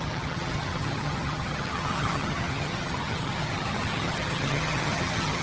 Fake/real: fake